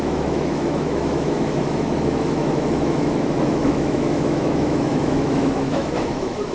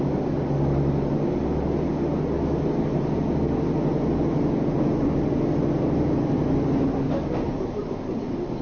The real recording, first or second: second